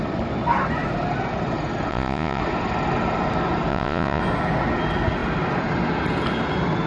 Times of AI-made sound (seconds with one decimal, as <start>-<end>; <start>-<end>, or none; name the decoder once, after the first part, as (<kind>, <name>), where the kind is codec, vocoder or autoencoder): 1.9-2.4 (vocoder, Vocos); 3.7-4.2